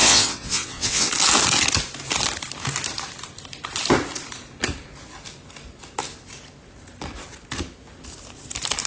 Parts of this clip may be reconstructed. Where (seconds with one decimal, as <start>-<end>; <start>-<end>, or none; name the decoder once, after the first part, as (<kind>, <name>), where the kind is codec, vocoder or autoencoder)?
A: 0.0-1.1 (vocoder, WaveNeXt)